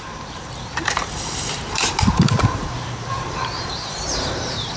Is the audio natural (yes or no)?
no